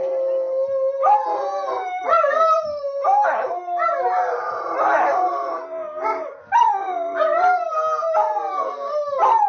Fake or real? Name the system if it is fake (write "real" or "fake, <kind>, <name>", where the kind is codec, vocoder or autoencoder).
real